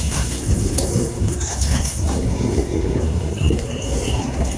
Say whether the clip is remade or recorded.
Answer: remade